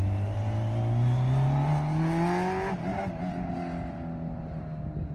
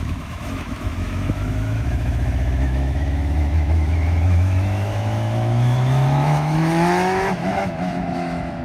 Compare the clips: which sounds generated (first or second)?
second